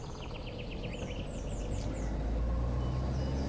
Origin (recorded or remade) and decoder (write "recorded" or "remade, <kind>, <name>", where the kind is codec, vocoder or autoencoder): recorded